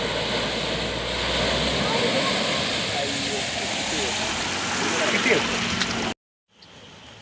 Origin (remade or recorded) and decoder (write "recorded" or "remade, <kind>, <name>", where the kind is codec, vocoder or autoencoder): recorded